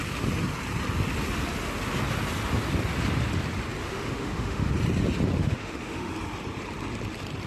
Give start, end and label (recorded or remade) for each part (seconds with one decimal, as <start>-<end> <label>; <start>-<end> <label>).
0.0-3.8 recorded; 3.8-4.7 remade; 4.7-5.4 recorded; 5.4-6.1 remade; 6.1-7.5 recorded